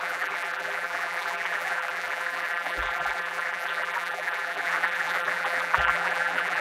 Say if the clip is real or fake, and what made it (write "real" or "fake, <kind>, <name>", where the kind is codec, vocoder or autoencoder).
fake, vocoder, BigVGAN v2